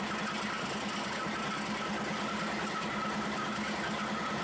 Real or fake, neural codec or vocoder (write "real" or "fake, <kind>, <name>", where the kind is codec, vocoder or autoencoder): real